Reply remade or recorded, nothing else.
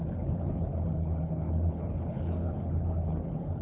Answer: remade